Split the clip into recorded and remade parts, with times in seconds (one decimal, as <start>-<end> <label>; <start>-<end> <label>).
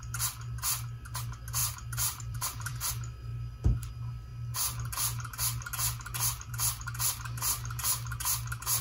0.0-1.6 recorded; 1.6-2.9 remade; 2.9-8.8 recorded